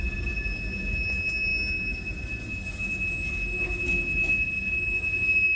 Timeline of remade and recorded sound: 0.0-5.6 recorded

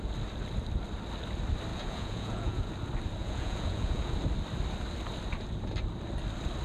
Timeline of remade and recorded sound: 0.0-1.7 recorded; 1.7-2.7 remade; 2.7-3.2 recorded; 3.2-4.1 remade; 4.1-6.6 recorded

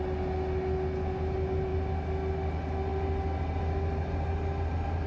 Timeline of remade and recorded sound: 0.0-5.1 recorded

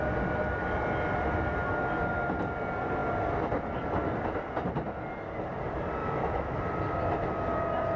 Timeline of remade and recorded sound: 0.0-6.0 recorded; 6.0-6.6 remade; 6.6-8.0 recorded

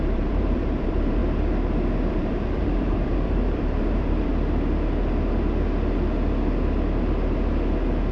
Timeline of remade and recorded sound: 0.0-1.2 remade; 1.2-2.1 recorded; 2.1-4.3 remade; 4.3-8.1 recorded

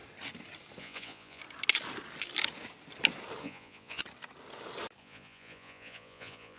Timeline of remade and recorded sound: 0.0-0.8 recorded; 0.8-1.4 remade; 1.4-3.4 recorded; 3.4-4.0 remade; 4.0-5.0 recorded; 5.0-6.6 remade